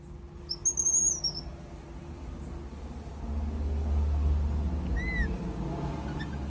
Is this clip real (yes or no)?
yes